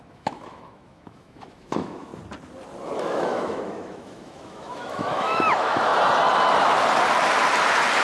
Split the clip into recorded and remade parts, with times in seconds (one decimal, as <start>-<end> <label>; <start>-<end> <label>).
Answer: 0.0-2.1 remade; 2.1-3.0 recorded; 3.0-5.9 remade; 5.9-8.0 recorded